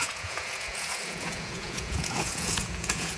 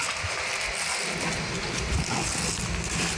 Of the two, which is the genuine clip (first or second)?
second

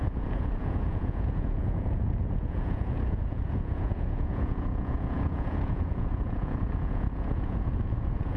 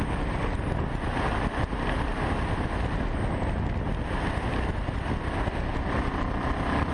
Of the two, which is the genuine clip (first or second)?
second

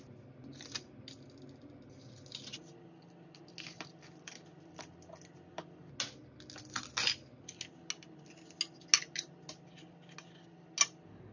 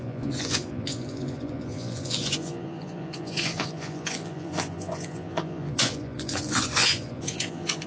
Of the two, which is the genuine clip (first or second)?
first